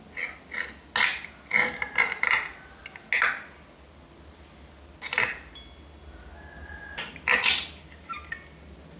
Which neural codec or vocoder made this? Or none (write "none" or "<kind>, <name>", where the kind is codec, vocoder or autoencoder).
none